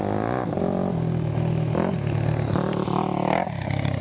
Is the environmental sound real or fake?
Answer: real